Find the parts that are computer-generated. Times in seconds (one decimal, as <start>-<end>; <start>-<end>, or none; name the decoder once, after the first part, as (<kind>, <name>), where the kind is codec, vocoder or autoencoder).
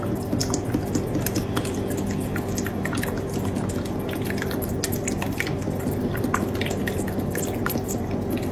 none